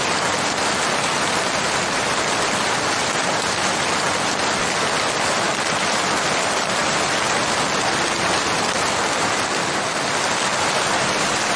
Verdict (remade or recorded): recorded